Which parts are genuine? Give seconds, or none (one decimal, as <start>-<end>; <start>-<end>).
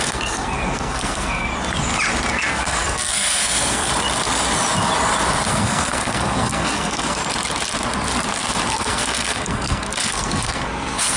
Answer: 1.5-2.3; 3.9-5.5; 7.2-8.7